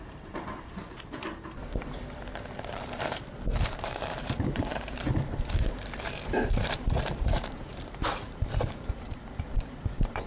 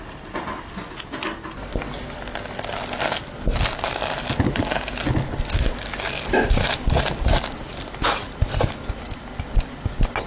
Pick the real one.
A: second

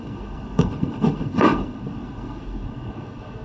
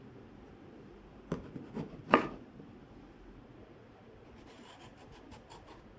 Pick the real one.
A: second